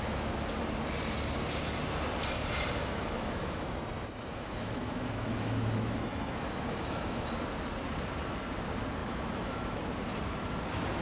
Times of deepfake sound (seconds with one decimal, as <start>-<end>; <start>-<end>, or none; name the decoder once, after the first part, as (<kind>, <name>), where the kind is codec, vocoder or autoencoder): 2.8-7.3 (autoencoder, DAC-VAE); 9.0-9.8